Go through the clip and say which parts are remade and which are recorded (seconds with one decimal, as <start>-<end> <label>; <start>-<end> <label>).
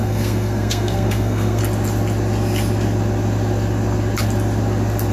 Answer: 0.0-1.6 remade; 1.6-5.1 recorded